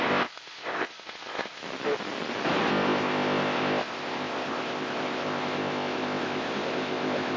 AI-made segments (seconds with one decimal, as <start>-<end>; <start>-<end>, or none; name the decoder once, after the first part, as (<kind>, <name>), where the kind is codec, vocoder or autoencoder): 0.0-1.6 (codec, ZipCodec); 2.7-7.4